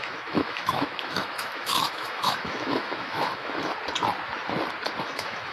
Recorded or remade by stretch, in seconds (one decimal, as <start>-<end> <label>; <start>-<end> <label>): 0.0-3.7 remade; 3.7-5.0 recorded; 5.0-5.5 remade

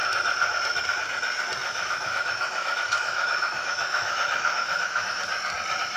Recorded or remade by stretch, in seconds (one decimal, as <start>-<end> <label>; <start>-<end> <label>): 0.0-1.6 recorded; 1.6-5.2 remade; 5.2-6.0 recorded

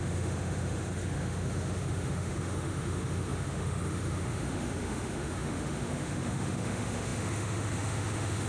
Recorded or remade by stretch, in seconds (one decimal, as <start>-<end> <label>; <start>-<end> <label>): 0.0-8.5 remade

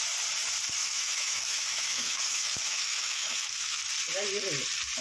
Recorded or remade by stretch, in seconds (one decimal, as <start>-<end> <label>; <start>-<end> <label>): 0.0-0.8 recorded; 0.8-3.8 remade; 3.8-5.0 recorded